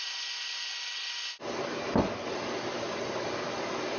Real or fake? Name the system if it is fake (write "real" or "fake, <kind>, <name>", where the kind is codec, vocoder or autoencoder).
real